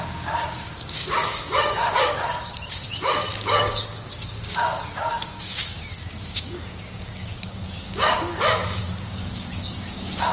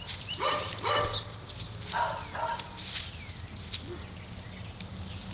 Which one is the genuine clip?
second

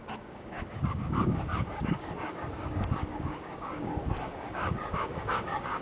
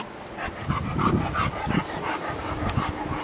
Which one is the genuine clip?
second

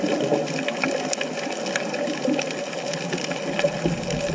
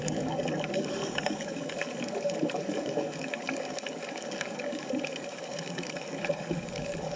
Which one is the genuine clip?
first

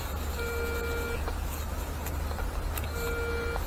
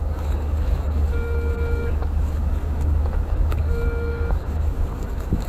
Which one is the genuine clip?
first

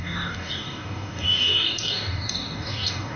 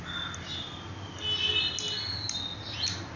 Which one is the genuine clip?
second